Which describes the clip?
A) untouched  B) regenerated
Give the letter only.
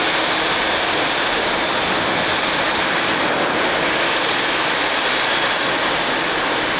A